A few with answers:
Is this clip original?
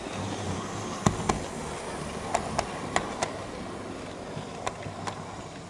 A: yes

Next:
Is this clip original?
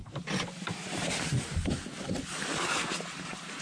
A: yes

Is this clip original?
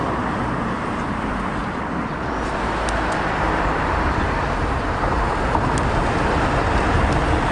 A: yes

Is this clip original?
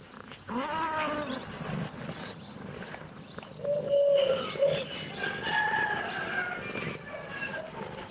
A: yes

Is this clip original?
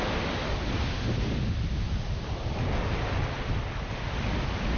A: yes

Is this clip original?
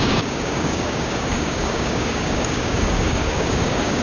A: no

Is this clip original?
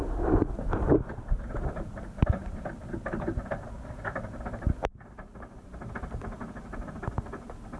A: no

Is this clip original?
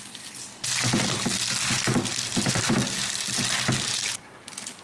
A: yes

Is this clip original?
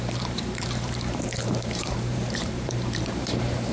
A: no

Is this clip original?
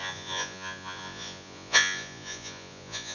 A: no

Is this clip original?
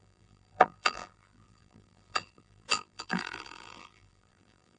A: no